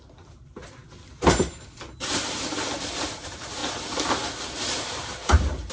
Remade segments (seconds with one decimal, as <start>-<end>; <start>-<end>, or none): 0.0-0.8; 2.8-3.6; 4.5-5.7